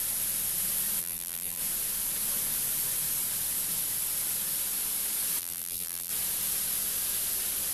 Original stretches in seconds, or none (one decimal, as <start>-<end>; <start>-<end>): 0.0-1.0; 1.6-5.4; 6.1-7.7